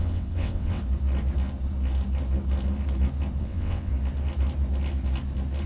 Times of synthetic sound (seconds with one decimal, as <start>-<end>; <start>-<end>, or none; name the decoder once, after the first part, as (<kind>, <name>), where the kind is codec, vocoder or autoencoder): 0.0-0.8 (vocoder, WaveNeXt); 3.4-3.9